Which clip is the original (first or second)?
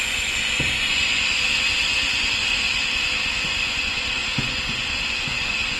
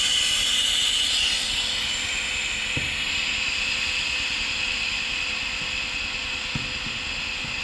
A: second